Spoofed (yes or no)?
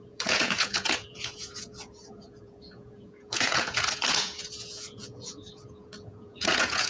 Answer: yes